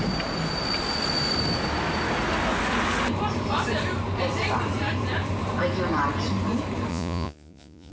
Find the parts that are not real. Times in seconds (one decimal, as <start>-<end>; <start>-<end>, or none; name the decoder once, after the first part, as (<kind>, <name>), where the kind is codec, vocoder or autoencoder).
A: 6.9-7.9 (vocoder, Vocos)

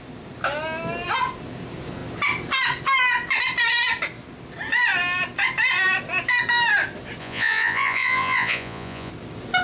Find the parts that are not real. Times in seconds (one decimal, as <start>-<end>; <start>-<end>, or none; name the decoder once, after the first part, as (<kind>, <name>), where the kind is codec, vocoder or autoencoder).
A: 7.2-9.1 (vocoder, Vocos)

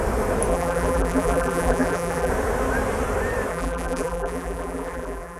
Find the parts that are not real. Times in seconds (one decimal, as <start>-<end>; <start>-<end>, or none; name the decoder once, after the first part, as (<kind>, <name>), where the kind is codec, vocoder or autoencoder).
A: 0.5-2.3 (vocoder, BigVGAN v2); 3.5-5.4

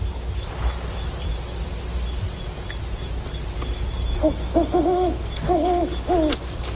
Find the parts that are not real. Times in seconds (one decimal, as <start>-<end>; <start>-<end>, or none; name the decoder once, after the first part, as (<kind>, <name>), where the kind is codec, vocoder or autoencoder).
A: 4.1-5.8 (codec, SNAC)